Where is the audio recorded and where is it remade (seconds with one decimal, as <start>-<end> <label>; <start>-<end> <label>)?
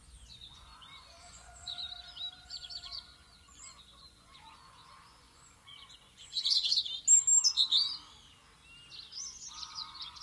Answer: 0.0-1.8 remade; 1.8-2.4 recorded; 2.4-6.7 remade; 6.7-9.2 recorded; 9.2-10.2 remade